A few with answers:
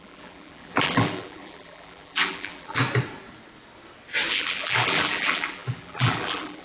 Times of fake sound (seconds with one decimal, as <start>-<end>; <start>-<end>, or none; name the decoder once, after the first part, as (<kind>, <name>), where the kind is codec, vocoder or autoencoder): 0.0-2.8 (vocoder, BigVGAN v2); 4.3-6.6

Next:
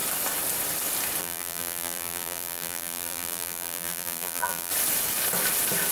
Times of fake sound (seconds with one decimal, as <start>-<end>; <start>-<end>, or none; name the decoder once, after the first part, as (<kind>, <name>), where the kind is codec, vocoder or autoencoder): 1.2-4.7 (vocoder, BigVGAN v2)

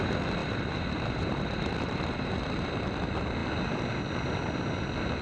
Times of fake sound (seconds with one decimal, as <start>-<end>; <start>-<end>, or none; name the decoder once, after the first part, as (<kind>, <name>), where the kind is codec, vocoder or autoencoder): 0.4-2.3 (vocoder, BigVGAN v2)